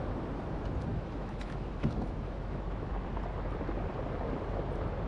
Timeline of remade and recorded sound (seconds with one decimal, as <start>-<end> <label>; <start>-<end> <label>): 0.0-0.9 recorded; 0.9-3.1 remade; 3.1-5.1 recorded